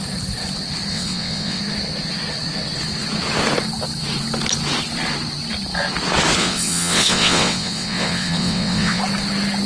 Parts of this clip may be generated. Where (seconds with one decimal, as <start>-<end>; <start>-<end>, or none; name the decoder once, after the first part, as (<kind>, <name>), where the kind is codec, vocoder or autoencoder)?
0.9-1.6 (vocoder, WaveNeXt); 6.4-9.0